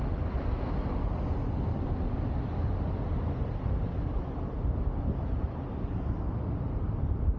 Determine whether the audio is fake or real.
real